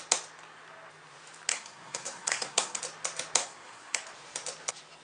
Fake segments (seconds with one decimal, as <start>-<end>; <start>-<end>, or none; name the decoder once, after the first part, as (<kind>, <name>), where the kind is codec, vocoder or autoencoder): 1.5-2.8 (codec, SNAC); 3.4-4.0